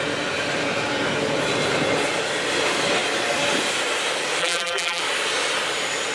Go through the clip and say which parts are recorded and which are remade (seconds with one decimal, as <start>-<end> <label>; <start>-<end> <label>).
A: 0.0-4.4 recorded; 4.4-5.0 remade; 5.0-6.1 recorded